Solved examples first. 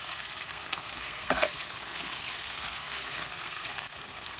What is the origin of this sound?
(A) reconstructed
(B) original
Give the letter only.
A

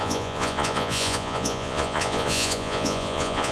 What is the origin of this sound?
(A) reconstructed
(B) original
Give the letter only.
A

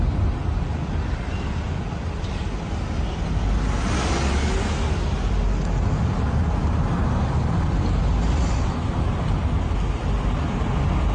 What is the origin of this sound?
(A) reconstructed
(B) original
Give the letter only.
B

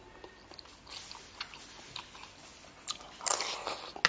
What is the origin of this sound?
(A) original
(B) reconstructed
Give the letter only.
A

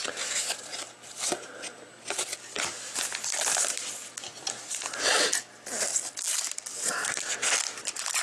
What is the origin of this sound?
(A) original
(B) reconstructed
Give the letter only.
A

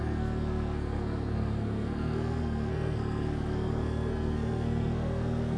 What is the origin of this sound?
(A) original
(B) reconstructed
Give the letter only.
B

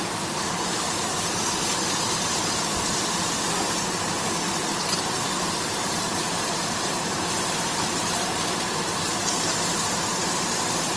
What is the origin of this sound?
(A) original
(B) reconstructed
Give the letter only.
B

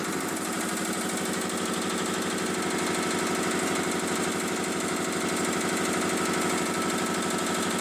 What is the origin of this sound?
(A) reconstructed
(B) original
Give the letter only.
B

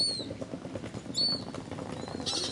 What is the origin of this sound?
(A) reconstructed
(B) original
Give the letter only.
B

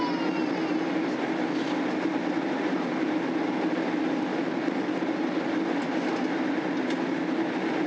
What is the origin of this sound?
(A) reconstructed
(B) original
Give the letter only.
B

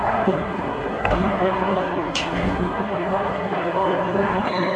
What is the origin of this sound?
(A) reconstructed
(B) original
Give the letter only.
A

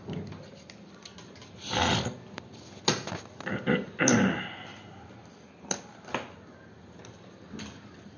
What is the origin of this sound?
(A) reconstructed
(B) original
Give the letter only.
B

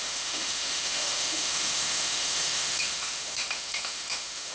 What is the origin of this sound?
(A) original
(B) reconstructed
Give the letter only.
B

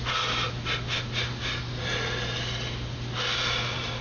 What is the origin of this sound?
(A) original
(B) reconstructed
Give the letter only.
A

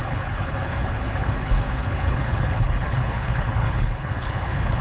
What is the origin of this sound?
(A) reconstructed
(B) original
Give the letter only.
A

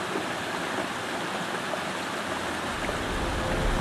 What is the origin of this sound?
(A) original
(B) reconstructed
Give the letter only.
A